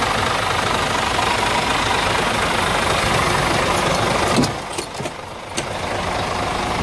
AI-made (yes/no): no